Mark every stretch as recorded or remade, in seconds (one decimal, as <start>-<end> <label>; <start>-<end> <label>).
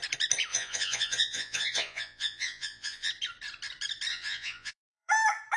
0.0-0.5 recorded; 0.5-3.1 remade; 3.1-4.1 recorded; 4.1-5.1 remade; 5.1-5.6 recorded